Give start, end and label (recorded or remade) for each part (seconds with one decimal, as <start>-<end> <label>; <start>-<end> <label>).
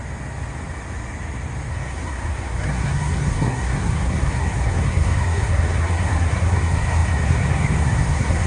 0.0-1.7 recorded; 1.7-8.5 remade